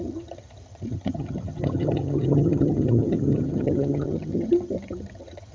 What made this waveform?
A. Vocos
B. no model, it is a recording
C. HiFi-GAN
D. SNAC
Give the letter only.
C